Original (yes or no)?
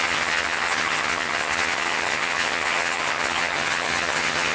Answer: no